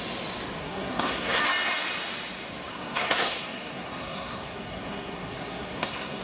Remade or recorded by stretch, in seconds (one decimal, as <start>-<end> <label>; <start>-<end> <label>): 0.0-0.6 recorded; 0.6-1.4 remade; 1.4-2.7 recorded; 2.7-6.2 remade